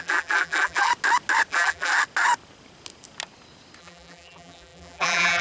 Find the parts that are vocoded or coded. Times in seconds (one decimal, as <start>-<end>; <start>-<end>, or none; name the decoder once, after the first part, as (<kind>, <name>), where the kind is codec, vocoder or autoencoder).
0.0-0.9 (vocoder, BigVGAN v2); 1.5-1.9; 3.8-5.4